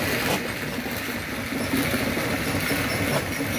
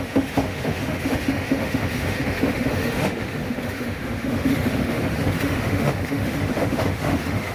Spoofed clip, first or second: second